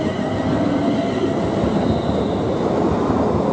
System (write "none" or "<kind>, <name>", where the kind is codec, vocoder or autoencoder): none